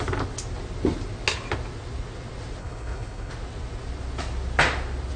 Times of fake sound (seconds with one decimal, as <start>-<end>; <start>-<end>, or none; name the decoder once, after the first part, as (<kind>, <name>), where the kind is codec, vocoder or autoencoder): 2.6-3.3 (codec, HILCodec)